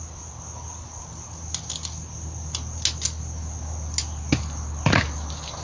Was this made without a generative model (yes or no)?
yes